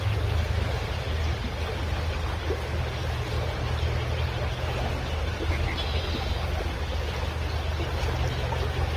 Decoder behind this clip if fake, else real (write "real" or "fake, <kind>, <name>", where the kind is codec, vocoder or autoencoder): real